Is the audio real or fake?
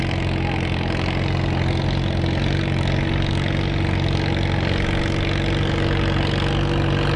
real